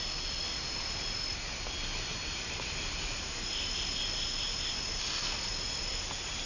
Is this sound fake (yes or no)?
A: no